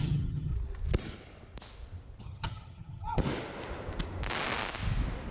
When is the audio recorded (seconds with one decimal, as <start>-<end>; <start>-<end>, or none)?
0.5-2.2; 3.2-5.3